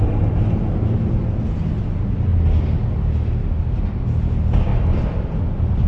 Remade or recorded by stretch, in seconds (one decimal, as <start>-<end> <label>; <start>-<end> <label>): 0.0-4.7 recorded; 4.7-5.5 remade; 5.5-5.9 recorded